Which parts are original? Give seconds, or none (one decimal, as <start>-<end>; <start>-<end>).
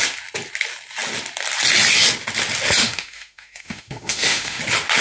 0.0-2.8; 4.6-5.0